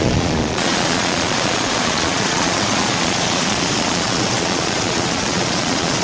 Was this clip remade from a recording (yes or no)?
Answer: yes